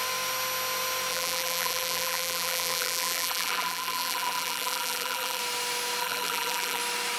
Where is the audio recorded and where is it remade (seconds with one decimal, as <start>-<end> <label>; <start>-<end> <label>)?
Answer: 0.0-1.1 recorded; 1.1-5.4 remade; 5.4-6.0 recorded; 6.0-6.8 remade; 6.8-7.2 recorded